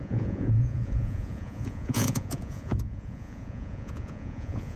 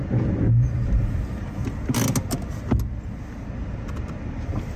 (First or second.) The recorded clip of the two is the second